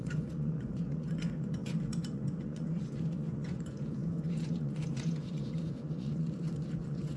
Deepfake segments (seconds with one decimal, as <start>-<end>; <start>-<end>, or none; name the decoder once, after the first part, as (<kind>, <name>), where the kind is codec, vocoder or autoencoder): 0.0-7.2 (vocoder, Vocos)